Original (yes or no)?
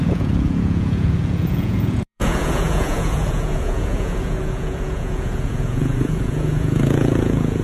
no